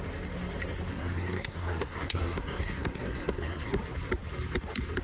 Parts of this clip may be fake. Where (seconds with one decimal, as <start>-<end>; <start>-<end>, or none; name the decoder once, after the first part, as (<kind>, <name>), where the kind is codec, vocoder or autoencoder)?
0.9-3.8 (codec, SNAC)